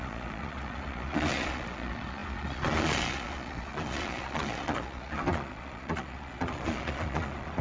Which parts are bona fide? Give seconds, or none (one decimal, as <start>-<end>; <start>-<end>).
none

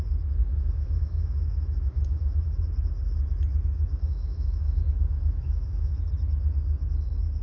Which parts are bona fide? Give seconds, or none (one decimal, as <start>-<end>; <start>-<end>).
0.0-0.4; 2.6-3.9; 6.1-7.4

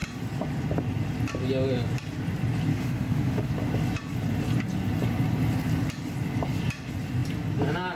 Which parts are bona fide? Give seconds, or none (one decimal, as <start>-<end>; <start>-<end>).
0.0-2.7; 3.5-8.0